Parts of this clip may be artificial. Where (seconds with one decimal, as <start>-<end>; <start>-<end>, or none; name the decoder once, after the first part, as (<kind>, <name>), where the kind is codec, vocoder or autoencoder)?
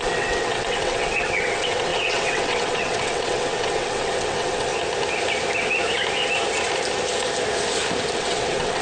0.0-4.7 (vocoder, WaveNeXt); 8.2-8.8